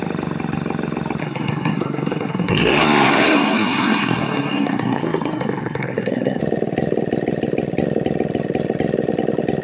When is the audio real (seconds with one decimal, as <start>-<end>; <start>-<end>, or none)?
0.0-1.2; 6.4-9.6